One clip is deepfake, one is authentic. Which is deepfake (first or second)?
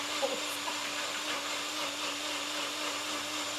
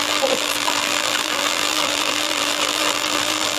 second